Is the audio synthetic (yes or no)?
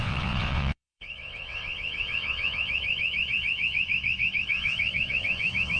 yes